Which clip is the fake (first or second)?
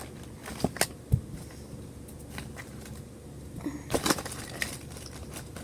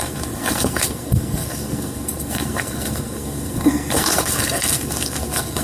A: second